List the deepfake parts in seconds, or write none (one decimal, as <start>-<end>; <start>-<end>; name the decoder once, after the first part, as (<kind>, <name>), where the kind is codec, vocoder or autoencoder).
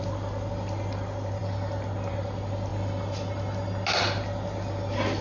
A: none